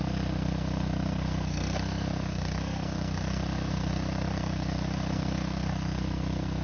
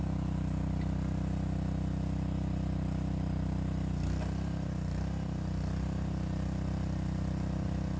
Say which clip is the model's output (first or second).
first